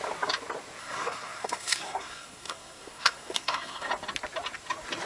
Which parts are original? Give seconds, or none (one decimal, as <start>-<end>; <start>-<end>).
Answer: 0.0-0.8; 3.9-5.1